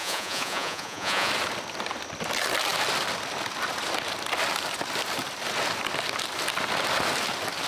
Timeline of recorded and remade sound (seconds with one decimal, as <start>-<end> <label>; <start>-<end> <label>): 0.0-1.3 remade; 1.3-7.7 recorded